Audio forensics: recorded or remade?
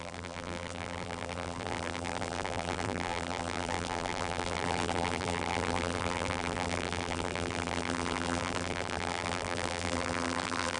remade